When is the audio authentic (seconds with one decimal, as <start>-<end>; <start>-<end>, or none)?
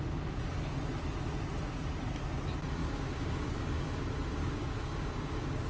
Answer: 0.0-2.8; 4.0-4.4